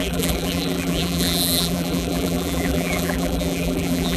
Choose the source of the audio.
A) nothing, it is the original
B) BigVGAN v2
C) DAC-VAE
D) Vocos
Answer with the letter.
B